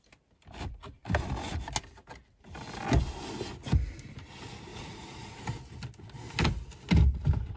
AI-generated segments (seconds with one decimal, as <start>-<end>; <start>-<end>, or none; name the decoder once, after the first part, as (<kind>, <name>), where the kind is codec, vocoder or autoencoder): 4.7-5.4 (vocoder, Vocos)